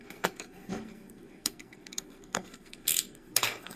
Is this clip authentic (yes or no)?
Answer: no